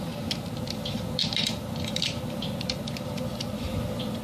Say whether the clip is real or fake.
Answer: fake